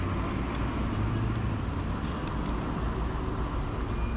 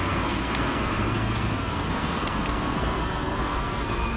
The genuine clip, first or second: first